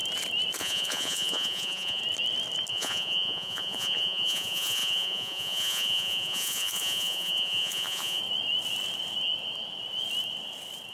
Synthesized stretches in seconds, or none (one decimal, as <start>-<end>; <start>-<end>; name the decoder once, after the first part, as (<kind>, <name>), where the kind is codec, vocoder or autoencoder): 0.6-2.0 (vocoder, Vocos); 2.7-8.2